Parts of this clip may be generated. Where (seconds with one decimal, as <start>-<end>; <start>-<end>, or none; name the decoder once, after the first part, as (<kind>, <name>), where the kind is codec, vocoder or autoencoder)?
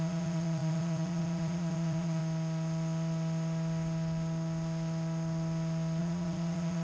0.0-2.2 (vocoder, Vocos); 6.0-6.8